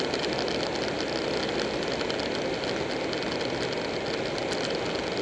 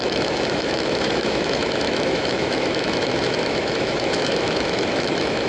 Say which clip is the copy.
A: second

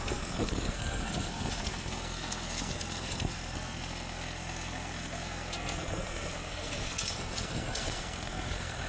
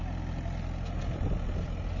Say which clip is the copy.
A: first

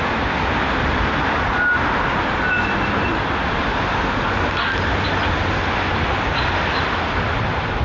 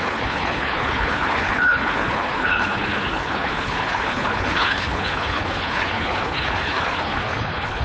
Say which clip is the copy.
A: second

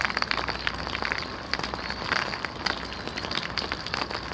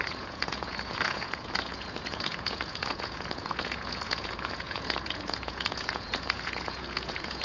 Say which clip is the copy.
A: second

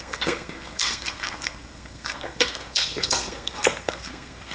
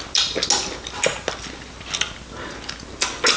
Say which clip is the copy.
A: first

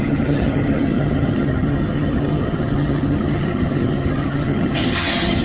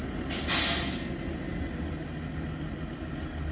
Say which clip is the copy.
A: first